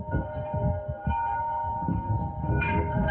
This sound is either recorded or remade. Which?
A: remade